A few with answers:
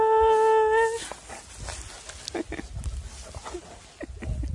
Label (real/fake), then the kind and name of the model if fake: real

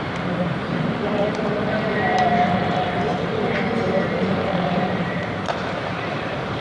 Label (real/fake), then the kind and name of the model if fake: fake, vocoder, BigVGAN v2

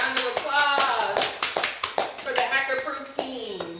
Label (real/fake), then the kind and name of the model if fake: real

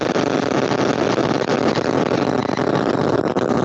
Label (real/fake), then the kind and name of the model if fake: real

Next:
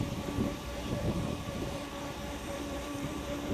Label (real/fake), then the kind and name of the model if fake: fake, vocoder, BigVGAN v2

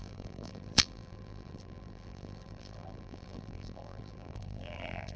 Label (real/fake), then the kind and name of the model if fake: fake, vocoder, BigVGAN v2